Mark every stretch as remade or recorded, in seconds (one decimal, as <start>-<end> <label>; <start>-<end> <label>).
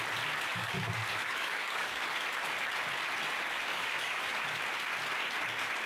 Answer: 0.0-0.5 recorded; 0.5-2.2 remade; 2.2-3.7 recorded; 3.7-4.6 remade; 4.6-5.9 recorded